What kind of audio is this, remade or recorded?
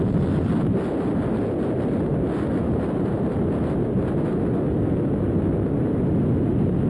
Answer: recorded